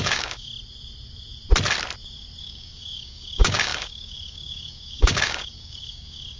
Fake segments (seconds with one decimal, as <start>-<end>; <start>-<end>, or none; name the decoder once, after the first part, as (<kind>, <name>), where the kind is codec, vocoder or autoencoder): 0.0-0.5 (codec, DAC); 2.4-6.4